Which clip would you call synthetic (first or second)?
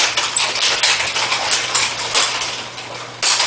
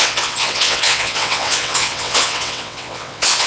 second